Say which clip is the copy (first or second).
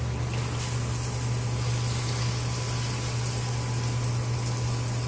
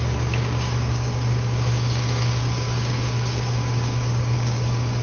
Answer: second